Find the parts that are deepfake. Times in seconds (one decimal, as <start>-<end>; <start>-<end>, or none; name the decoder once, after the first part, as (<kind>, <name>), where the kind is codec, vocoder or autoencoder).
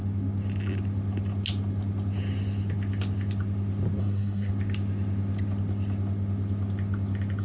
4.0-4.5 (codec, SNAC)